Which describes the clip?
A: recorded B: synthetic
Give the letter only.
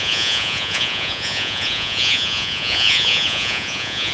B